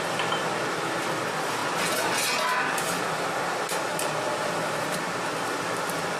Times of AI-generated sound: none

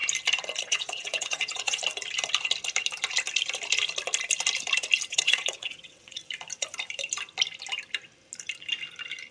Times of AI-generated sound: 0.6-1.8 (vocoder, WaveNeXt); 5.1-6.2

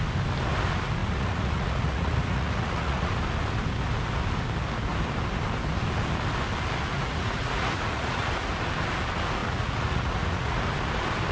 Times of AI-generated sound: 1.0-3.1 (vocoder, Vocos); 6.9-8.3; 9.4-10.6